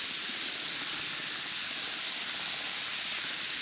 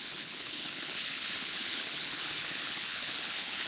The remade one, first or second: second